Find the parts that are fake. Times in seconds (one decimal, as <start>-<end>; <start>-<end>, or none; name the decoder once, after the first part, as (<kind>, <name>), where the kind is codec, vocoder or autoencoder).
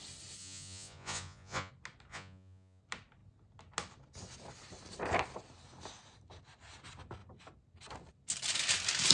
0.4-1.7 (vocoder, Vocos); 2.1-2.8